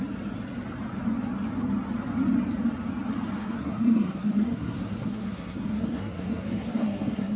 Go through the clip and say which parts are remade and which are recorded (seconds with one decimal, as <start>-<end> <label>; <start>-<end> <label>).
0.0-3.4 recorded; 3.4-7.4 remade